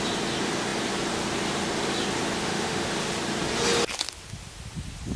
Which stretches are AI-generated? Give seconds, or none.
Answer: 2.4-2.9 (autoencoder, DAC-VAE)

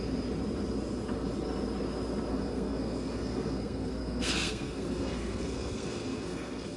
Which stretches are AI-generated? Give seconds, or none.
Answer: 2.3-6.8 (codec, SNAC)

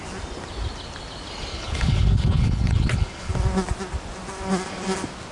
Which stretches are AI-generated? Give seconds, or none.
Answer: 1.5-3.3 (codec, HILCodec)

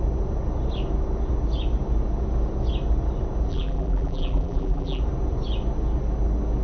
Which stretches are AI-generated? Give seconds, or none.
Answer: 3.5-5.0 (vocoder, BigVGAN v2)